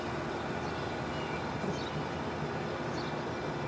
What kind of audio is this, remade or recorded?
recorded